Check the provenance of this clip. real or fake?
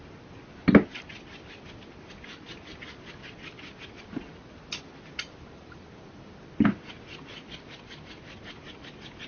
real